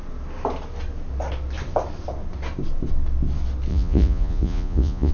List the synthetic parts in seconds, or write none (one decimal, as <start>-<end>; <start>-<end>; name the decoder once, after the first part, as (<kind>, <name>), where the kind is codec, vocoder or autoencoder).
3.7-5.1 (vocoder, Vocos)